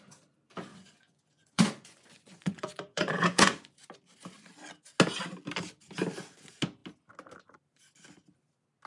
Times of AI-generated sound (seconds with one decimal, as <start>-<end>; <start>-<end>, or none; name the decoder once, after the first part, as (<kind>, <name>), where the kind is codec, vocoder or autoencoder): 0.7-3.7 (vocoder, Vocos)